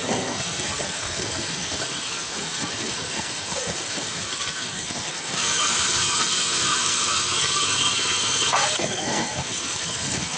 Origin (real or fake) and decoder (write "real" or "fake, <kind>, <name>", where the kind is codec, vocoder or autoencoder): fake, codec, SNAC